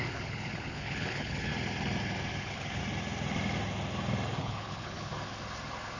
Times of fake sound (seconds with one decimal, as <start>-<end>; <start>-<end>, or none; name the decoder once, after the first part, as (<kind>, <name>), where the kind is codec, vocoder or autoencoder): 0.0-1.5 (codec, HILCodec); 2.4-2.8; 4.4-5.1